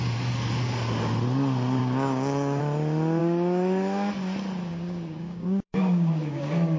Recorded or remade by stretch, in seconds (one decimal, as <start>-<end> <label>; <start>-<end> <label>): 0.0-1.8 recorded; 1.8-2.6 remade; 2.6-3.2 recorded; 3.2-4.1 remade; 4.1-4.7 recorded; 4.7-6.8 remade